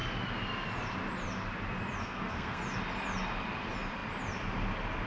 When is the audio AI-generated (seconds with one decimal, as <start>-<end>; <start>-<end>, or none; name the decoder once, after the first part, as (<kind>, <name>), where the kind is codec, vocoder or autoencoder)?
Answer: 2.0-2.6 (codec, SNAC)